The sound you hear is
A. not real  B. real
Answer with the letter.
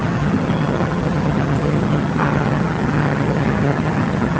A